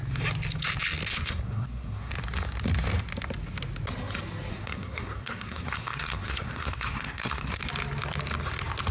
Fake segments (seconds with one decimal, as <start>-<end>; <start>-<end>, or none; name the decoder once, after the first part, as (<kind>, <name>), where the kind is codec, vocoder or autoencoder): 1.1-2.1 (codec, SNAC); 4.5-7.6